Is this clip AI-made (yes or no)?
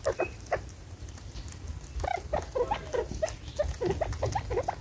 no